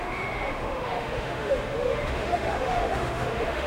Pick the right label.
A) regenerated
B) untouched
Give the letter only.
A